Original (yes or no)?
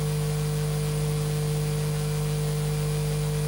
yes